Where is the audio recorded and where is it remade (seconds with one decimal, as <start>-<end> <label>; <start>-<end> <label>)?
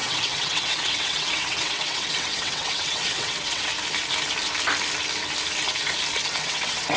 0.0-3.7 remade; 3.7-6.3 recorded; 6.3-7.0 remade